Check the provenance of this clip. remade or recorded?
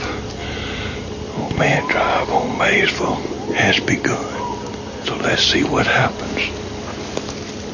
recorded